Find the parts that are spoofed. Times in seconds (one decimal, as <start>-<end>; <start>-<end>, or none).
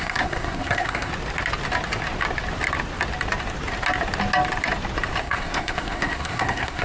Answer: 0.0-1.1; 5.2-6.8